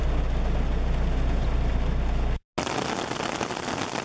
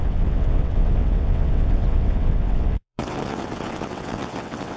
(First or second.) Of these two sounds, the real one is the first